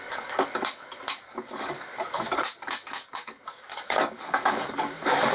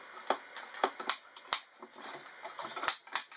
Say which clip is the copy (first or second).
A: first